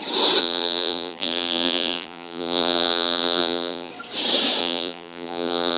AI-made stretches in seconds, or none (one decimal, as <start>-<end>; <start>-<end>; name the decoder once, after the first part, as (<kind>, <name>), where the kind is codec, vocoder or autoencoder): 0.4-3.9 (vocoder, BigVGAN v2); 4.6-5.8